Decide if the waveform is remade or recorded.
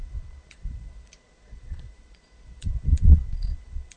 remade